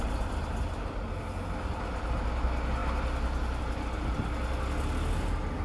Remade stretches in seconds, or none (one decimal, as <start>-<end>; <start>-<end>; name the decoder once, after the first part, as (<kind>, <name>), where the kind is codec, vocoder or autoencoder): none